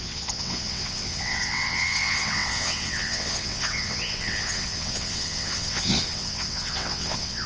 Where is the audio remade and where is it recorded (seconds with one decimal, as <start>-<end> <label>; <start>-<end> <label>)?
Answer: 0.0-7.5 remade